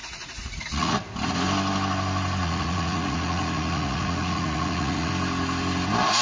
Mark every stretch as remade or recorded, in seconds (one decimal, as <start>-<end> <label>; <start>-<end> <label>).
0.0-1.0 remade; 1.0-2.4 recorded; 2.4-5.1 remade; 5.1-6.2 recorded